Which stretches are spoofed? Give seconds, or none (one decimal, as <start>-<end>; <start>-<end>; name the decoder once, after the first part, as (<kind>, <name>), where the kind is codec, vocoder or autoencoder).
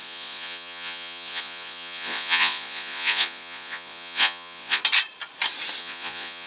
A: 0.0-4.8 (vocoder, Vocos); 5.8-6.5